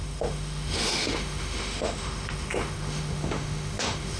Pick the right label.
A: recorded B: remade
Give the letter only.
B